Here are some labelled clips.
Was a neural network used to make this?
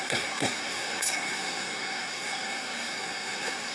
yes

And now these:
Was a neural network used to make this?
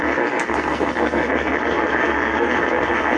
yes